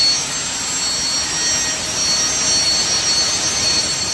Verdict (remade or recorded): recorded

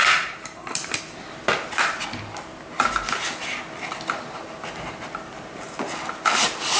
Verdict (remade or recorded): recorded